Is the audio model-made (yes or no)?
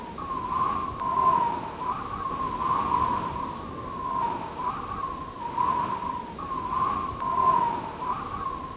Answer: no